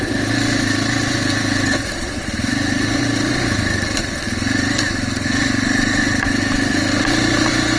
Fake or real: fake